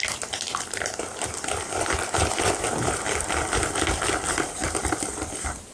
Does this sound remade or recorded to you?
recorded